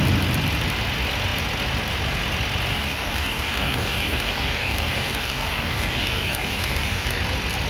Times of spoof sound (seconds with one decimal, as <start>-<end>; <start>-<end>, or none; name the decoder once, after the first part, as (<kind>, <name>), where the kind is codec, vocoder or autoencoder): 2.7-7.2 (codec, DAC)